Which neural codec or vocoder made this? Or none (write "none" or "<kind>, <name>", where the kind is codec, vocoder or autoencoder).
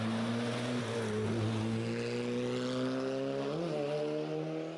none